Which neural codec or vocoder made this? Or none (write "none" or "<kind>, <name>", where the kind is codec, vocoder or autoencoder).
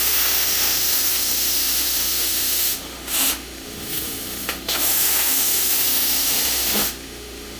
autoencoder, DAC-VAE